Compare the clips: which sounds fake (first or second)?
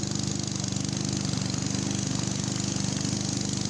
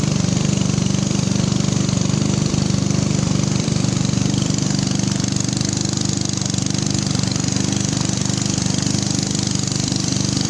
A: second